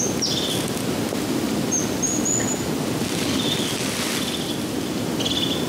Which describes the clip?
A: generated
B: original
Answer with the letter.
B